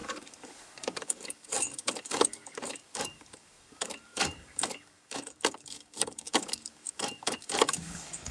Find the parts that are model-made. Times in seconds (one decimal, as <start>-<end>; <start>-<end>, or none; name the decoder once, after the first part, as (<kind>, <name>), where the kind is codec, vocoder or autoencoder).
0.0-8.3 (codec, DAC)